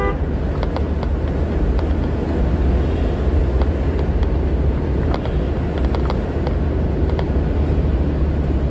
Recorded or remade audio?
recorded